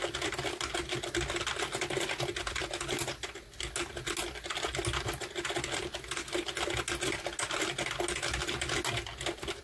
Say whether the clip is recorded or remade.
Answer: recorded